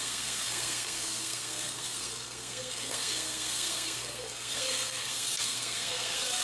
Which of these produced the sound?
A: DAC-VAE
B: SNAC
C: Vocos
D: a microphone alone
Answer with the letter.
B